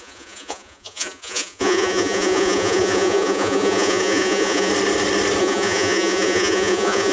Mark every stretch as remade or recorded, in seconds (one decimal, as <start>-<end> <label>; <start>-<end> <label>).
0.0-4.7 remade; 4.7-5.4 recorded; 5.4-7.1 remade